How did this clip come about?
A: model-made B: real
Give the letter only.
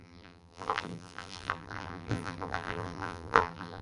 A